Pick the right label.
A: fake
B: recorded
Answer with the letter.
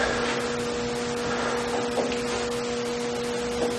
B